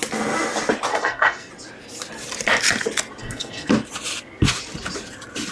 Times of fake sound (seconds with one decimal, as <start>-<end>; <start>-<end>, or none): 0.9-1.5; 3.2-3.7